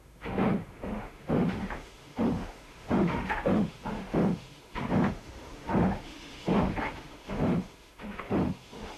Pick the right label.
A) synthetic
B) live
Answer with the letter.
A